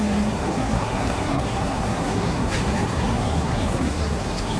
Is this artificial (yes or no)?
yes